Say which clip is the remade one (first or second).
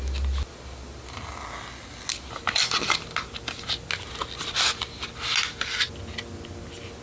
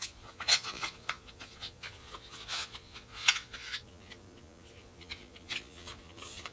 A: second